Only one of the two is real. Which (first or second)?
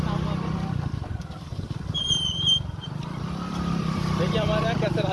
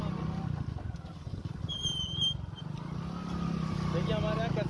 second